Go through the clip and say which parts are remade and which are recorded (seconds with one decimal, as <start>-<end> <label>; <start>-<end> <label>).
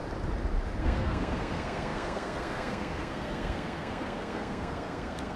0.0-0.8 recorded; 0.8-5.4 remade